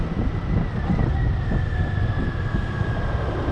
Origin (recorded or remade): recorded